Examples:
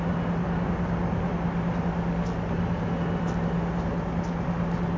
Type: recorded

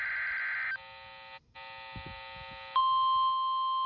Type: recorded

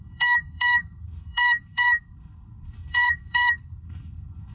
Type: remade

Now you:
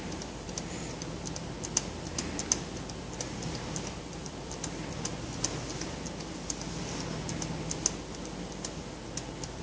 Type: recorded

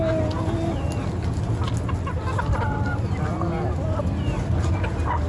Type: recorded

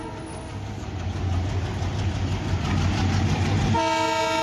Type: recorded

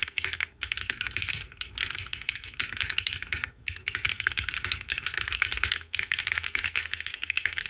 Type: remade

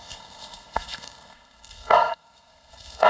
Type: remade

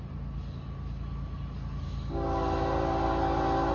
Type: recorded